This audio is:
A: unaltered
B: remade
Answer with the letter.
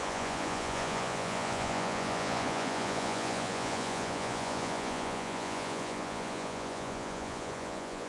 B